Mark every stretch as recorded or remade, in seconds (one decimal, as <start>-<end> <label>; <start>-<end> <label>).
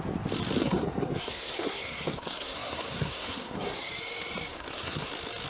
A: 0.0-0.6 recorded; 0.6-3.9 remade; 3.9-4.5 recorded; 4.5-5.1 remade; 5.1-5.5 recorded